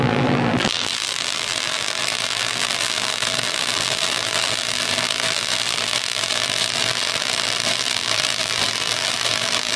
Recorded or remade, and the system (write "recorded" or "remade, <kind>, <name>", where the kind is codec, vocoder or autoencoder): remade, vocoder, BigVGAN v2